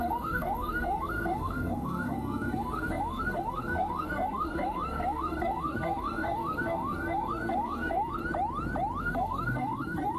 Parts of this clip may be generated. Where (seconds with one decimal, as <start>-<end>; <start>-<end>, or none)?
0.0-8.2; 9.0-10.2